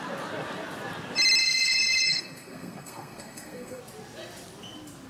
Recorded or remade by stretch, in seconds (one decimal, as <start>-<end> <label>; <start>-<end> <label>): 0.0-1.4 recorded; 1.4-3.8 remade; 3.8-5.1 recorded